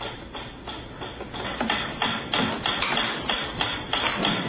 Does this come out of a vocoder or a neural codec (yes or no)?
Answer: no